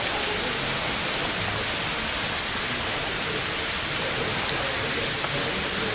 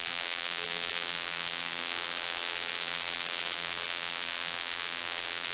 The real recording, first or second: first